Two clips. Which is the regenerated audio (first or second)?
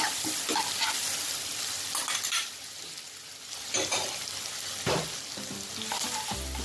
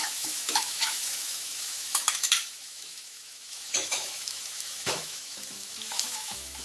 second